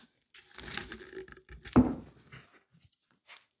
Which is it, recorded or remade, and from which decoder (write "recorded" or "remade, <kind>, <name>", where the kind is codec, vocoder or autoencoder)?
recorded